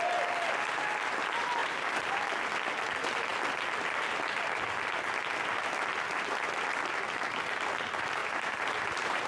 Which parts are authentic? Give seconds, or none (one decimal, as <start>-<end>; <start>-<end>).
0.0-1.6; 2.2-8.2